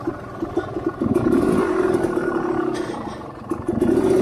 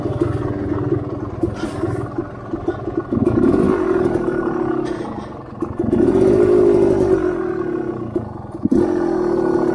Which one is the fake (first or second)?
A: first